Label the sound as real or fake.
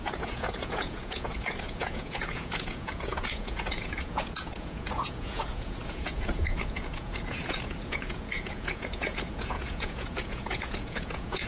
fake